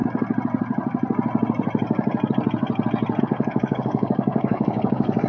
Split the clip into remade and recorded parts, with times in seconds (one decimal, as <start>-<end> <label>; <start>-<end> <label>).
0.0-3.2 recorded; 3.2-5.3 remade